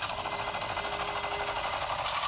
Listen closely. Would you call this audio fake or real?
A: real